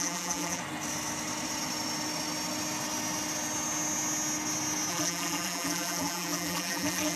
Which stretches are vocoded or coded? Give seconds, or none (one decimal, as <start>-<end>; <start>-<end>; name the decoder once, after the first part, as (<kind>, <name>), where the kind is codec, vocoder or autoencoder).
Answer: 0.0-0.6 (vocoder, BigVGAN v2); 4.9-7.2

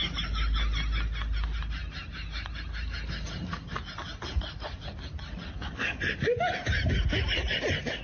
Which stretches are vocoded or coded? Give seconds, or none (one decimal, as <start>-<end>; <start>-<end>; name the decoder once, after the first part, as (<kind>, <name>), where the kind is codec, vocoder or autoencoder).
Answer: none